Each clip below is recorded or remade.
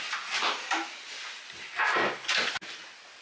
recorded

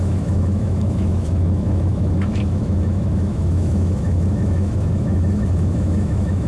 remade